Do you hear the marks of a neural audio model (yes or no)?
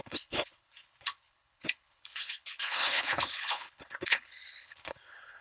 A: yes